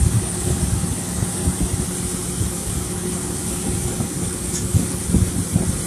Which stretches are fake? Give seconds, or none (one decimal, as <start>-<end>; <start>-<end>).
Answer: 0.0-1.4; 2.4-5.0